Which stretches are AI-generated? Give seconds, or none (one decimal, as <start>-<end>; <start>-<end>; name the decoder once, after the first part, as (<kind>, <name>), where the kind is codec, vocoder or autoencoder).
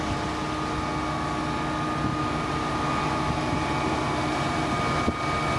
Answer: 2.1-4.7 (vocoder, BigVGAN v2)